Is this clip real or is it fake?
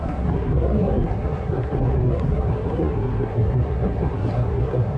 fake